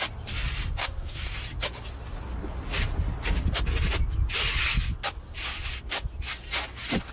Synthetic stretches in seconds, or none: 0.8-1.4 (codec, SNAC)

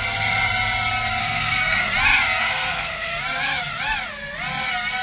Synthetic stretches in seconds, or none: 1.2-1.9 (codec, SNAC); 2.4-3.1

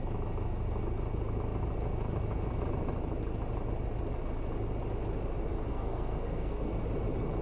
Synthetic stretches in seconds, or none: 5.7-6.7 (codec, SNAC)

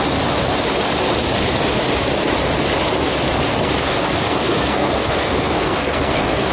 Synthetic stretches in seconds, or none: 3.5-6.5 (codec, SNAC)

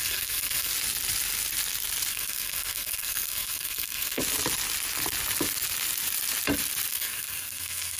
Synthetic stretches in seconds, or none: 0.0-0.7 (codec, SNAC); 2.1-4.2; 6.9-8.0